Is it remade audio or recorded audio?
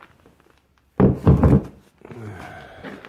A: recorded